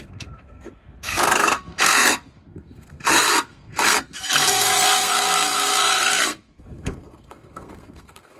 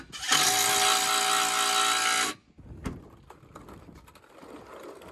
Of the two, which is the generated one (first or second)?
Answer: first